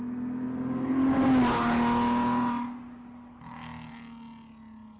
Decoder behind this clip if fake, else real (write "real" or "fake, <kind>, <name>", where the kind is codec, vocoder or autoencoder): real